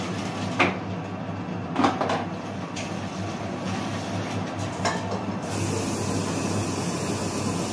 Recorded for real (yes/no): yes